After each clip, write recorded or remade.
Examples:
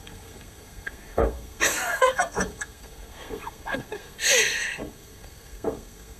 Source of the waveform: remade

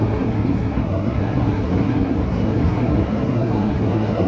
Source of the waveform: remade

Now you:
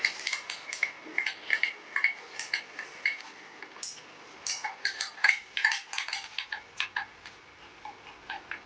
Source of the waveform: recorded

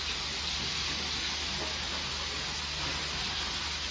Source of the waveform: recorded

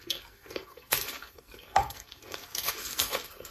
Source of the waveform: remade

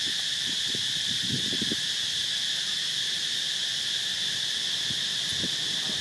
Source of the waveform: recorded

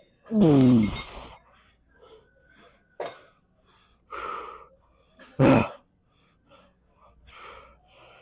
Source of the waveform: recorded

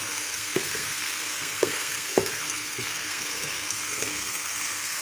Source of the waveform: remade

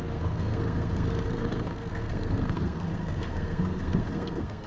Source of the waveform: remade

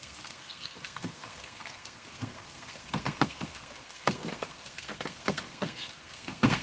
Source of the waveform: remade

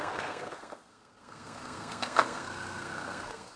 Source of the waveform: remade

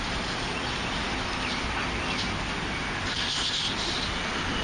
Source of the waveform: recorded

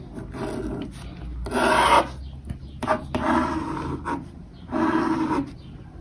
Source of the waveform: recorded